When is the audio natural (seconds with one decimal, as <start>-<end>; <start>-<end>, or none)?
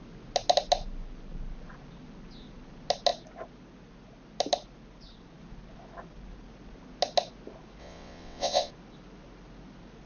0.0-7.8; 8.7-10.1